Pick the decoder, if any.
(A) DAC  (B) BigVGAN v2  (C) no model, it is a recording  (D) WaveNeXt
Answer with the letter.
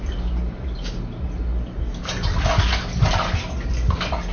C